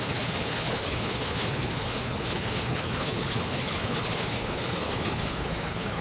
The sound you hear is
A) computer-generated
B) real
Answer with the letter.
A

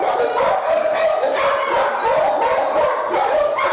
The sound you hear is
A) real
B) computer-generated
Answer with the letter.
A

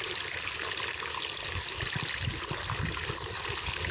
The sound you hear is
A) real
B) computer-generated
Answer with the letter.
A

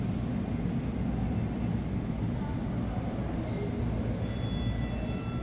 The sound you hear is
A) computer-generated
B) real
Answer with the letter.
B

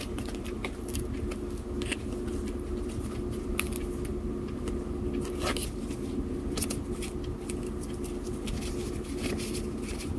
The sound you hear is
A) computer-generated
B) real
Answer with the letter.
B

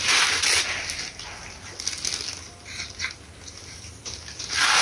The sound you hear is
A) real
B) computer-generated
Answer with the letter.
A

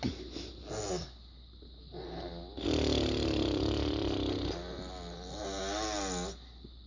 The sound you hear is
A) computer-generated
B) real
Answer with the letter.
B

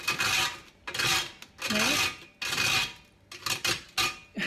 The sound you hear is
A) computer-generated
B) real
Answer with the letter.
B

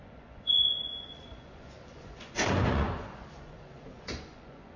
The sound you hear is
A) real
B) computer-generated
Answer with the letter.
B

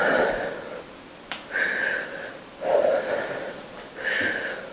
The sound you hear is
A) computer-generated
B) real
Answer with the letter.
B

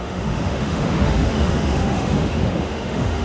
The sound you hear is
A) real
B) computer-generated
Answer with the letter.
B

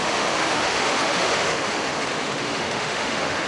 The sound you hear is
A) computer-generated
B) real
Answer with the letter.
A